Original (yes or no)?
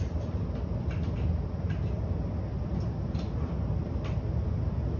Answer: yes